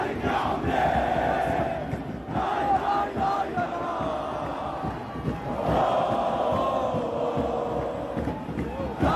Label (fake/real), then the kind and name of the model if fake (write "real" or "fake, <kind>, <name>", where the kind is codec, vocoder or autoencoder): real